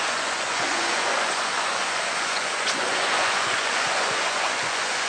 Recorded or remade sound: remade